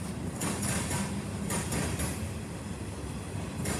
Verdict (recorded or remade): recorded